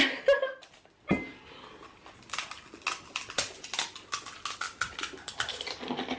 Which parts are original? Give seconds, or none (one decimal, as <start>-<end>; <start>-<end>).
0.0-6.2

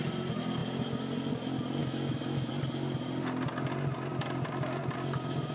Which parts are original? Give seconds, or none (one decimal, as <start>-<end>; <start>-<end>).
0.0-1.8; 2.5-5.5

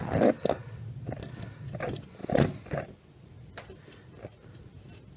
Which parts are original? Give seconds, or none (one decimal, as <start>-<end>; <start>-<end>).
0.0-5.2

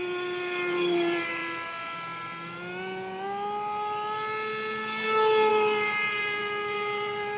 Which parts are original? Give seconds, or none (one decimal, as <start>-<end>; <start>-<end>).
1.4-5.5

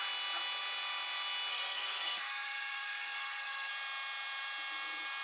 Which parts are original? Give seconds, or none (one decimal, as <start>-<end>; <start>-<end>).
0.0-1.5; 3.7-5.2

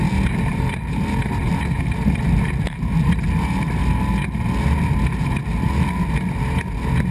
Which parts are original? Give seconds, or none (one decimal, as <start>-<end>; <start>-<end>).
0.0-0.5; 1.2-7.1

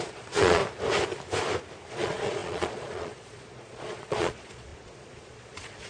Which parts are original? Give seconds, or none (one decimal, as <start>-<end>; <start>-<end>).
0.6-1.9

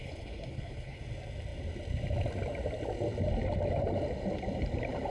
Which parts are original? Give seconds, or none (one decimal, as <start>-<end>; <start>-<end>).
1.0-5.1